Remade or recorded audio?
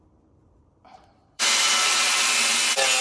remade